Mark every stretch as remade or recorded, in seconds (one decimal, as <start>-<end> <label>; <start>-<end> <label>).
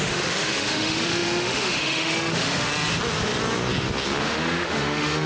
0.0-2.7 remade; 2.7-4.2 recorded; 4.2-5.3 remade